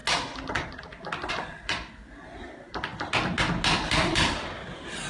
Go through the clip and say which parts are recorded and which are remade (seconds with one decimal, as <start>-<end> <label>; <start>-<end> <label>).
0.0-1.3 recorded; 1.3-2.9 remade; 2.9-4.1 recorded; 4.1-5.1 remade